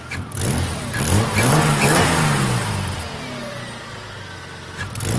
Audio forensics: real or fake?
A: real